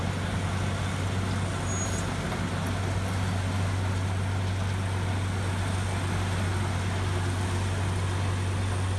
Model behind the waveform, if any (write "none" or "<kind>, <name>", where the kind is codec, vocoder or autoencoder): none